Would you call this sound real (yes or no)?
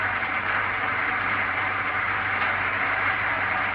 no